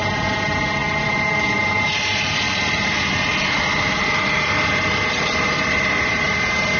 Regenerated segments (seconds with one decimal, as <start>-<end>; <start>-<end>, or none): none